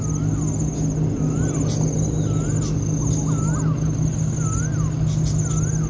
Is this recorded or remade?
recorded